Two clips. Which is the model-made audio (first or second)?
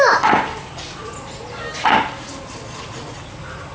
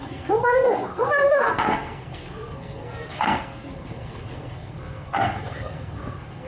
second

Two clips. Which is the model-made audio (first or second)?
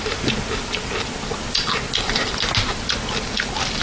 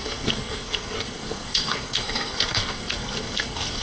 second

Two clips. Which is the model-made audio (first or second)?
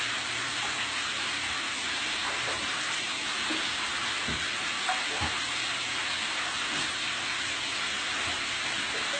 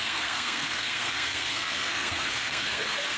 second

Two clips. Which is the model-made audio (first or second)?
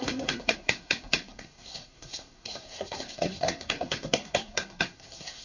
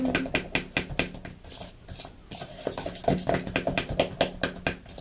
first